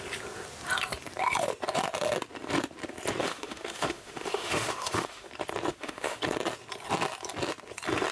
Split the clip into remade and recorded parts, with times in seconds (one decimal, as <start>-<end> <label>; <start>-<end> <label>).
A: 0.0-3.2 recorded; 3.2-5.3 remade; 5.3-5.7 recorded; 5.7-6.2 remade; 6.2-8.1 recorded